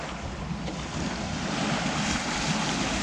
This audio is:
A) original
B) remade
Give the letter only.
A